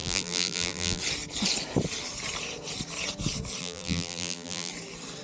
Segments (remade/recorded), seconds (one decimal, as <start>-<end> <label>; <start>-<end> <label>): 0.0-1.0 remade; 1.0-3.6 recorded; 3.6-4.7 remade; 4.7-5.2 recorded